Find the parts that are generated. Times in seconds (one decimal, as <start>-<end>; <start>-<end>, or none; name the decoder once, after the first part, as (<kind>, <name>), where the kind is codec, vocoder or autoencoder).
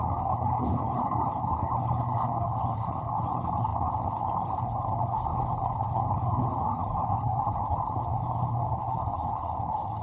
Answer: 0.0-10.0 (codec, HILCodec)